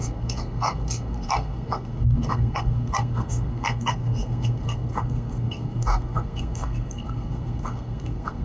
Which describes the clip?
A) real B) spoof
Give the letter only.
B